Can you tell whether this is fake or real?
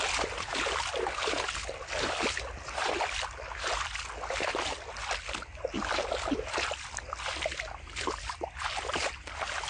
real